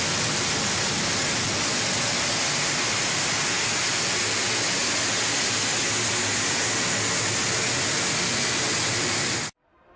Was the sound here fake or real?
real